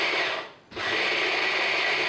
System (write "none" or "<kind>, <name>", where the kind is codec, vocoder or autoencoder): none